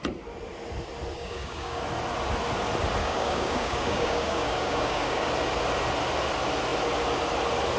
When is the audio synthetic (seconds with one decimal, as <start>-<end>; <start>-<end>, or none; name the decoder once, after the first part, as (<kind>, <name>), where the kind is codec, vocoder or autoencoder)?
1.1-1.8 (codec, DAC); 3.0-5.3